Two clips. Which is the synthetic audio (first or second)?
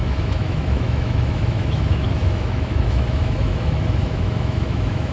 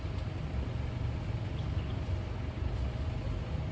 first